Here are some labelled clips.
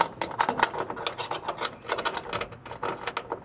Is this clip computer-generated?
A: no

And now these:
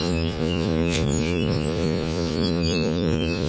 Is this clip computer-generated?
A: yes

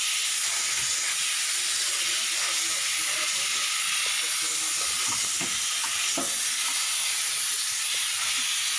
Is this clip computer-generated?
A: no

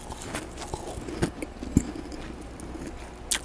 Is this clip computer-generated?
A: no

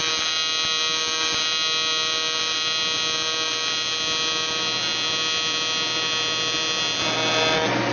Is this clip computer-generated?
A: no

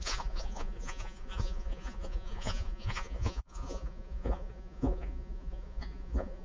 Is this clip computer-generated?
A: yes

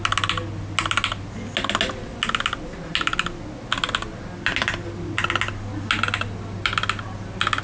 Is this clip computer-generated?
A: no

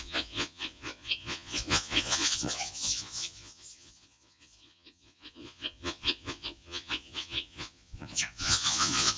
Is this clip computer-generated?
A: yes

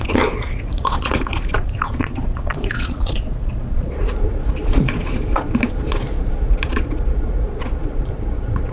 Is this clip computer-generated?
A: yes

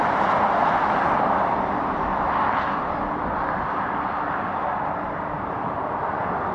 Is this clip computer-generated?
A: no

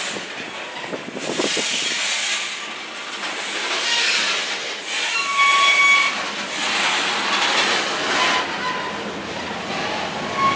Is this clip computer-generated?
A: no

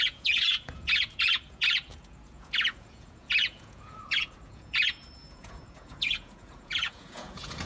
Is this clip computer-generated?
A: yes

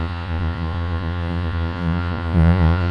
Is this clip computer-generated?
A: yes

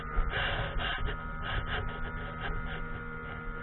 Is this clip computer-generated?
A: no